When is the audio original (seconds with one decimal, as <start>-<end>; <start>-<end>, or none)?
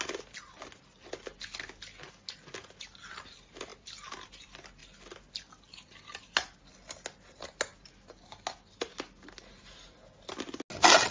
0.0-11.1